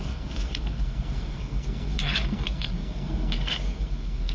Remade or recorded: remade